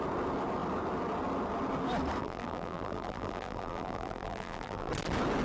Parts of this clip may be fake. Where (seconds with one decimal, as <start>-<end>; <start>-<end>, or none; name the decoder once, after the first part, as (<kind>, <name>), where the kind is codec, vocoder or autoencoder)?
2.2-4.9 (vocoder, BigVGAN v2)

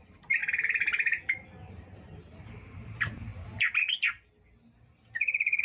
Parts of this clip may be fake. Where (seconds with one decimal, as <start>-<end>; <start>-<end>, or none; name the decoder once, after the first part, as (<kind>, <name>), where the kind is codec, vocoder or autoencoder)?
0.0-0.4 (vocoder, BigVGAN v2); 1.7-3.3

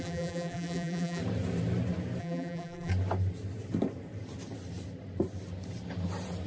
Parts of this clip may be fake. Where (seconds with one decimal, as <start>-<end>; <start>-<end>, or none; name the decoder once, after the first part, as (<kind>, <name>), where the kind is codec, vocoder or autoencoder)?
0.0-1.2 (vocoder, BigVGAN v2); 2.2-2.9

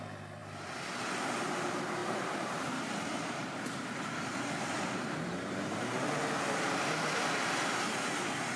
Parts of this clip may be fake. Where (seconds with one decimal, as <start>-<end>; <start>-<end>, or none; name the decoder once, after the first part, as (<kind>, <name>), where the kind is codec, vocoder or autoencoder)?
2.0-7.0 (vocoder, BigVGAN v2)

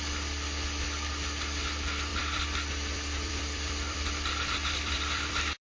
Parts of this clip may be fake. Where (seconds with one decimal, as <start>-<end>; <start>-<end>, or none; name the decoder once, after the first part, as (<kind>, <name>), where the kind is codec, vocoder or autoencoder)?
2.1-5.7 (vocoder, BigVGAN v2)